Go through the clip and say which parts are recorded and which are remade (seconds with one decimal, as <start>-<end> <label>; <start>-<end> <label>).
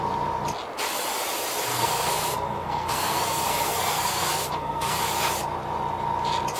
0.0-1.7 recorded; 1.7-5.0 remade; 5.0-6.6 recorded